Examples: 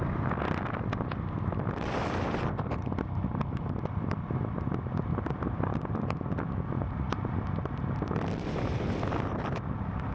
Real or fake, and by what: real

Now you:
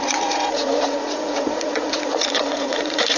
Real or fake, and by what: fake, vocoder, Vocos